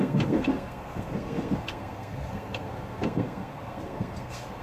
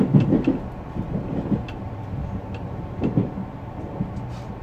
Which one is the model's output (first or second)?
first